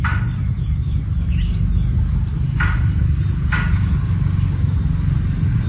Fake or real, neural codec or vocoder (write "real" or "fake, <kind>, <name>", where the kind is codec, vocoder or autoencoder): real